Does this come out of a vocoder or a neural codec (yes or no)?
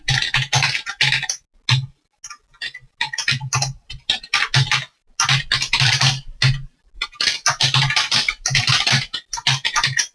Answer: no